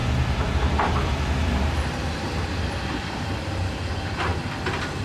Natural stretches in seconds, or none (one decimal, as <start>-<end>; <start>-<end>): 4.3-5.0